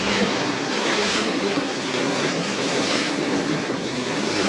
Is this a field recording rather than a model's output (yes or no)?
no